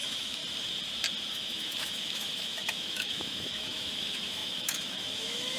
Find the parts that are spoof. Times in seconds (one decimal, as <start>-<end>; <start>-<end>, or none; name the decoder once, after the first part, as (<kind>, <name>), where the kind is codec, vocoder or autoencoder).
0.0-0.4 (autoencoder, DAC-VAE); 1.3-5.6